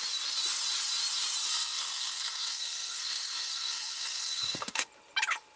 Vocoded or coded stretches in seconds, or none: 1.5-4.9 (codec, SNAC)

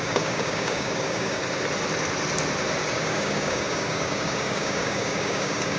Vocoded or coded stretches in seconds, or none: 0.0-1.4 (codec, DAC); 2.9-5.8

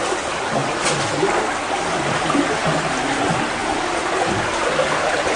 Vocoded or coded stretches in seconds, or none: none

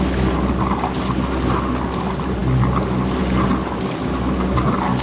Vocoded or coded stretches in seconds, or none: none

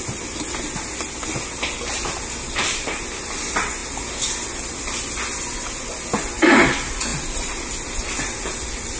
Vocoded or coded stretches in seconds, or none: none